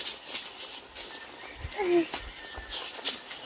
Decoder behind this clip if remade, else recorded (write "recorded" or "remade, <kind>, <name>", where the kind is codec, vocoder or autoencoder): recorded